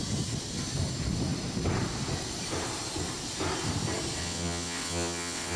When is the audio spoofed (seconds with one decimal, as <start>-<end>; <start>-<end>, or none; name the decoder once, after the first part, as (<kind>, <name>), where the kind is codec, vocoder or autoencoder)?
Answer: 4.2-5.6 (vocoder, WaveNeXt)